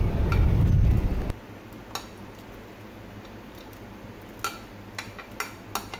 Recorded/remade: recorded